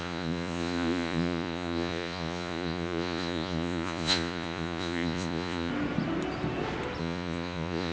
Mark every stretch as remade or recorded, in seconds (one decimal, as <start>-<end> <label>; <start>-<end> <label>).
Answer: 0.0-5.7 remade; 5.7-7.0 recorded; 7.0-7.9 remade